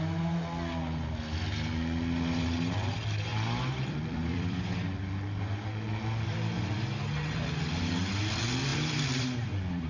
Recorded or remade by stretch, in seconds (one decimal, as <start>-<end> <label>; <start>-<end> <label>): 0.0-3.3 recorded; 3.3-4.6 remade; 4.6-8.7 recorded; 8.7-9.9 remade